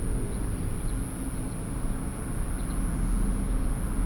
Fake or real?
real